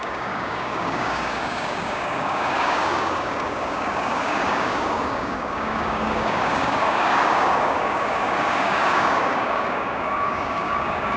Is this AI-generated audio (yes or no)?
yes